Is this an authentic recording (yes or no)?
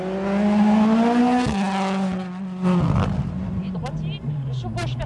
yes